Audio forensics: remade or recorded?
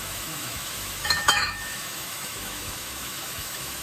remade